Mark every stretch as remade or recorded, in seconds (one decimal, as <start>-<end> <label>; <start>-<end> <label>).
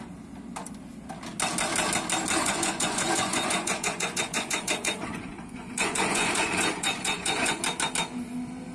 0.0-2.4 recorded; 2.4-7.6 remade; 7.6-8.7 recorded